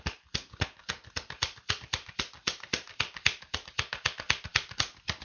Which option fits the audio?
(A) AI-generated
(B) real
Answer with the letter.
A